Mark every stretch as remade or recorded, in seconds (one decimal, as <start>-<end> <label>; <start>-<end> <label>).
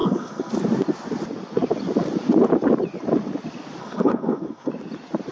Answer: 0.0-0.5 remade; 0.5-3.8 recorded; 3.8-4.7 remade; 4.7-5.3 recorded